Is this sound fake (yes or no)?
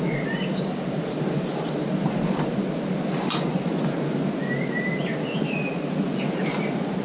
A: no